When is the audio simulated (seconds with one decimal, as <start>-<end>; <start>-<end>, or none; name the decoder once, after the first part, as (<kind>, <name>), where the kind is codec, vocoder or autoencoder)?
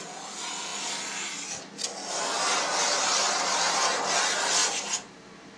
2.8-4.0 (vocoder, BigVGAN v2)